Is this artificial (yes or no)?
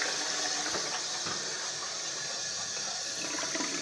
no